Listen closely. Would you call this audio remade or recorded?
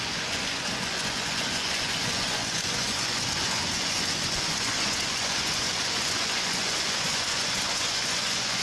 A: remade